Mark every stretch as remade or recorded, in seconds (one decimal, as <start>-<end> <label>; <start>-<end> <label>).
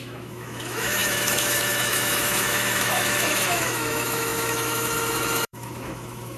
0.0-6.4 remade